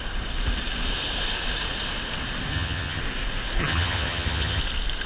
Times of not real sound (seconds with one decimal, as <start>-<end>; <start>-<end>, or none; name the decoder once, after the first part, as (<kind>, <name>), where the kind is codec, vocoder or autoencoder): 2.5-3.0 (vocoder, HiFi-GAN); 3.6-4.6